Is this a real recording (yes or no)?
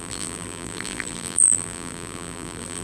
no